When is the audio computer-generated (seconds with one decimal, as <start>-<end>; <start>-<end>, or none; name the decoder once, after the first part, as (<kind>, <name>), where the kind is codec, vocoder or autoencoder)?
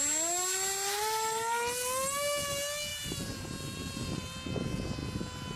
2.9-4.2 (vocoder, BigVGAN v2)